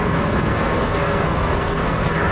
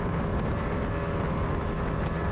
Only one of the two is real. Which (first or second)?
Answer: second